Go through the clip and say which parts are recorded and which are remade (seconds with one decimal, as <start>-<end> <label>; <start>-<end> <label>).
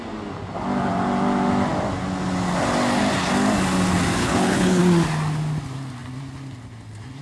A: 0.0-4.2 recorded; 4.2-4.8 remade; 4.8-7.2 recorded